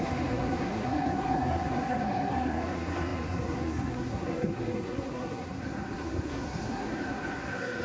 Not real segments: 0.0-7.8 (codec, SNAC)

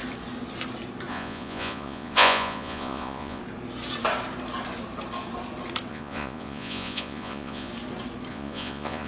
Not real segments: 1.1-3.4 (vocoder, Vocos); 5.9-7.7; 8.3-9.1

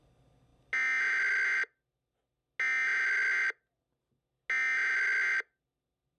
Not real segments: none

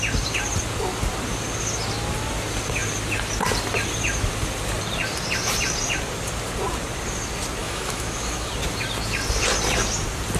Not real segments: 7.6-8.5 (autoencoder, DAC-VAE)

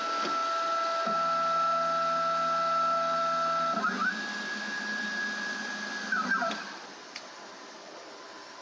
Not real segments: none

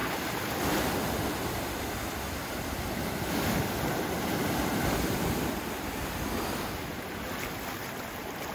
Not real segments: none

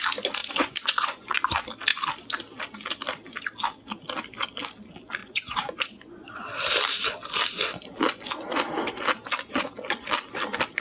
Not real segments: 0.4-1.5 (vocoder, Vocos); 5.2-6.4